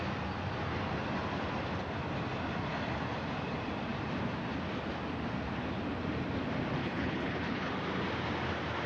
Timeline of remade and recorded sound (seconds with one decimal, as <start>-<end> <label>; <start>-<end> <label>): 0.0-6.8 recorded; 6.8-7.7 remade; 7.7-8.9 recorded